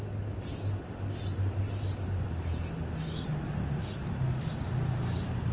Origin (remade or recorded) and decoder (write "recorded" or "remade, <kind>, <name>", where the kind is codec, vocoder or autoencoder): recorded